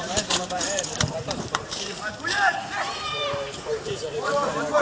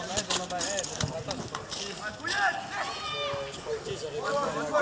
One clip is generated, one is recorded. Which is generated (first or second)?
first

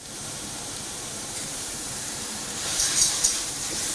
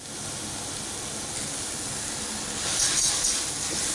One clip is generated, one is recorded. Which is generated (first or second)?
first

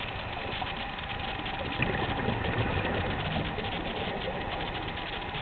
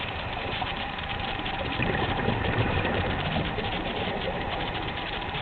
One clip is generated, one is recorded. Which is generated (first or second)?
second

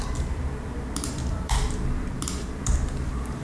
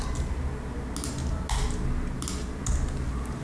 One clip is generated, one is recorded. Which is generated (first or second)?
first